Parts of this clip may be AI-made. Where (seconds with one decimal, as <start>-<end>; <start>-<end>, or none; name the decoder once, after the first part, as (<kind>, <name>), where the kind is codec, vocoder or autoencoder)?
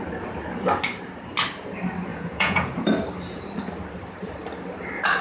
2.1-2.7 (vocoder, Vocos)